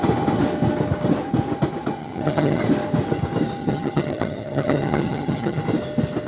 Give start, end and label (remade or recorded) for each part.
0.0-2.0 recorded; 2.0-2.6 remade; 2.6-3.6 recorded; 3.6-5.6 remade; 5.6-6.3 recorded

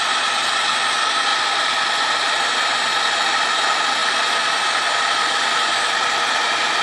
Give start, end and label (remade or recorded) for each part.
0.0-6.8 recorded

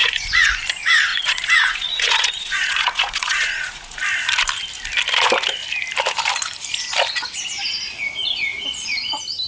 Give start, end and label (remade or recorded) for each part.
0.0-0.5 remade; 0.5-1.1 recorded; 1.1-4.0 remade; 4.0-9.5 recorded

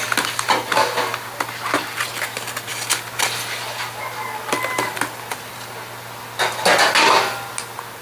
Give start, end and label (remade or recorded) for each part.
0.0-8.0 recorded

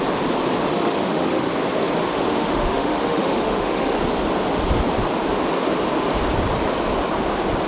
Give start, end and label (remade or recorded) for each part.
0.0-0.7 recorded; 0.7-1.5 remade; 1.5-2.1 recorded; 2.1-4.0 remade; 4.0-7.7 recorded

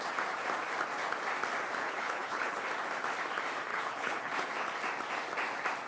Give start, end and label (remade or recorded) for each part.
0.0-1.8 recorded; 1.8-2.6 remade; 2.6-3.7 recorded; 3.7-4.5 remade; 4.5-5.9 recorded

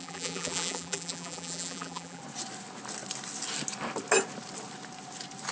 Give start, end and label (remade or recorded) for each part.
0.0-2.2 remade; 2.2-5.5 recorded

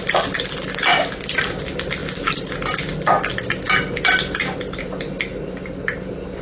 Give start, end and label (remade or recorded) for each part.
0.0-6.4 recorded